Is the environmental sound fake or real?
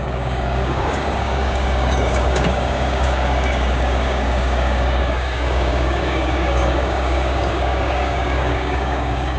fake